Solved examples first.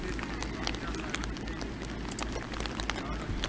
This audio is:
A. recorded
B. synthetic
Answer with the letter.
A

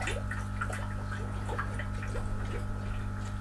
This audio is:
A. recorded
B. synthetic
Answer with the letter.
A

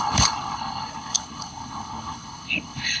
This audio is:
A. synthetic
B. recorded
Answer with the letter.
A